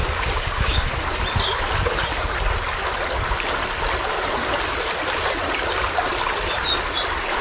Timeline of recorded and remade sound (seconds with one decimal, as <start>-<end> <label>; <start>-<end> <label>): 0.0-0.9 remade; 0.9-7.4 recorded